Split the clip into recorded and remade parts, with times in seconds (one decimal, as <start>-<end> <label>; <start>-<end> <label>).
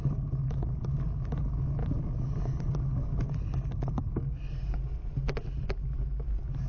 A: 0.0-6.7 recorded